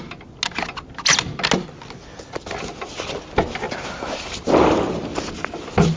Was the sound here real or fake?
real